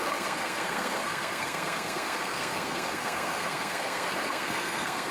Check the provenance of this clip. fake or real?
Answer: fake